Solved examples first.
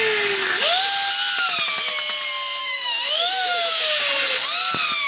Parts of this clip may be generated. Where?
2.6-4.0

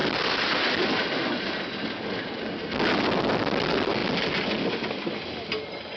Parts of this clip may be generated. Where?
none